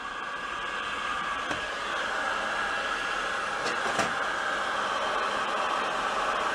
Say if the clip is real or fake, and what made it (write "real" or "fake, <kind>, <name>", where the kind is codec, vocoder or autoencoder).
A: real